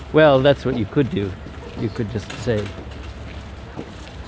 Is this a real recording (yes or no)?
yes